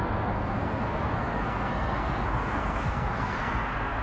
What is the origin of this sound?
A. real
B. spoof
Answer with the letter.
B